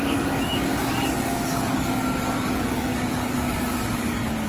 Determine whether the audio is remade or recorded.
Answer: remade